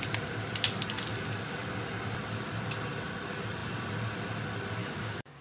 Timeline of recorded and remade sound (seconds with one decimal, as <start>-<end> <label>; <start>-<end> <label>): 0.0-4.8 recorded; 4.8-5.4 remade